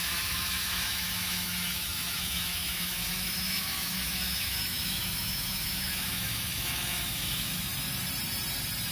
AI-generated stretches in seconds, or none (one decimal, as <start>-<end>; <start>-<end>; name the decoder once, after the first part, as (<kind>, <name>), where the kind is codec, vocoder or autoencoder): 0.0-7.7 (autoencoder, DAC-VAE)